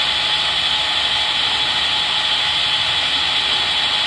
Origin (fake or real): real